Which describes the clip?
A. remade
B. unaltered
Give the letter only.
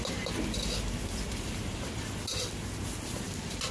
B